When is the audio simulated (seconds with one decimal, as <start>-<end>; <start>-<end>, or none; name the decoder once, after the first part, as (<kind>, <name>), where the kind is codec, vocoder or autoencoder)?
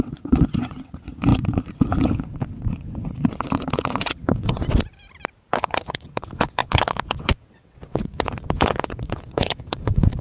0.0-4.6 (vocoder, WaveNeXt); 5.5-10.2